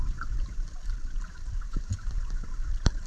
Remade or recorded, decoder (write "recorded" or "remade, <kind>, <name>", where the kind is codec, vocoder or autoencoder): remade, vocoder, BigVGAN v2